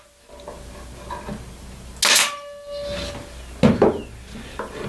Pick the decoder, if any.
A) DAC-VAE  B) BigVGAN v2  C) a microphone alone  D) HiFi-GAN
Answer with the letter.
C